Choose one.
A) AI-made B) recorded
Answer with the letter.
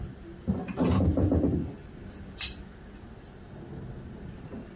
B